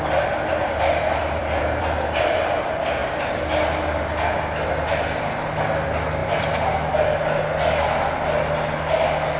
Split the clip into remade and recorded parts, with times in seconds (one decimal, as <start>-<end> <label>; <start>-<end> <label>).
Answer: 0.0-1.4 recorded; 1.4-2.6 remade; 2.6-6.2 recorded; 6.2-6.9 remade; 6.9-9.4 recorded